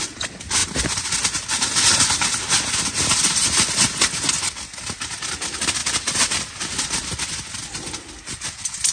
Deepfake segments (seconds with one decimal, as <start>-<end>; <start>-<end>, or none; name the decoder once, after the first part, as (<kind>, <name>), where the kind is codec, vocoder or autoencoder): 5.8-6.4 (vocoder, BigVGAN v2)

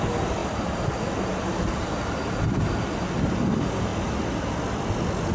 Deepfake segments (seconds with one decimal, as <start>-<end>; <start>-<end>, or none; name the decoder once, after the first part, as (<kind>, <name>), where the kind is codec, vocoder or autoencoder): 3.9-4.5 (vocoder, BigVGAN v2)

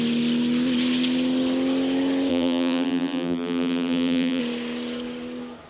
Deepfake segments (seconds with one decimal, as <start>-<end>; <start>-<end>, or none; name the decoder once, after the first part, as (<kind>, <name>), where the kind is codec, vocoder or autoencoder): 2.3-4.4 (vocoder, BigVGAN v2)